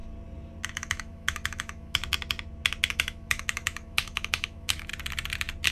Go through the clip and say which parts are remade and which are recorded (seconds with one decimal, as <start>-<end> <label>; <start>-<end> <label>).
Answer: 0.0-0.7 recorded; 0.7-2.0 remade; 2.0-2.9 recorded; 2.9-4.9 remade; 4.9-5.7 recorded